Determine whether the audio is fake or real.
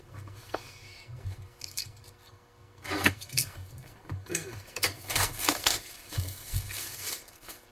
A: fake